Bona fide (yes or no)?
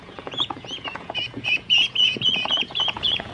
no